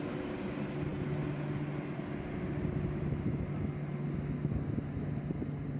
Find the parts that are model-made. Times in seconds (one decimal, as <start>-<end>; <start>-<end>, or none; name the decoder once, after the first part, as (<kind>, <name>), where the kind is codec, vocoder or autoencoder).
none